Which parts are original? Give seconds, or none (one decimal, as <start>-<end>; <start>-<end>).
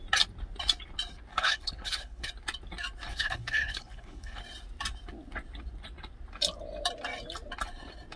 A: 0.0-1.3; 2.3-3.1; 4.4-8.2